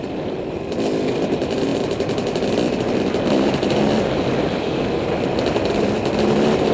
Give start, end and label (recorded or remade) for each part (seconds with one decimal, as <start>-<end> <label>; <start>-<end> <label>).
0.0-6.7 recorded